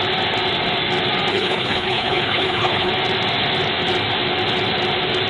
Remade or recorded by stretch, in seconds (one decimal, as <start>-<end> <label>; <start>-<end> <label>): 0.0-1.3 recorded; 1.3-2.9 remade; 2.9-5.3 recorded